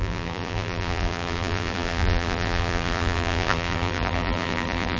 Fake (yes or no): yes